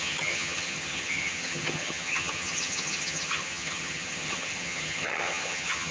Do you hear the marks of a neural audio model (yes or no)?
yes